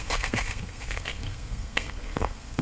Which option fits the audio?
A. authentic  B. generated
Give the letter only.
B